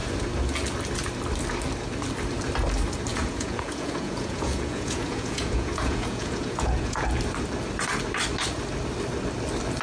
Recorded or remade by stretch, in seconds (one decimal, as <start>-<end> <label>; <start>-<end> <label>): 0.0-3.1 recorded; 3.1-7.1 remade; 7.1-9.8 recorded